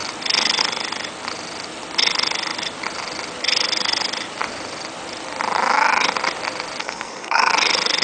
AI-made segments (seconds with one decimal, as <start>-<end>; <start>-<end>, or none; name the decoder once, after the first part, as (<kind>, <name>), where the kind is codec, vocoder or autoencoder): 6.8-7.5 (codec, SNAC)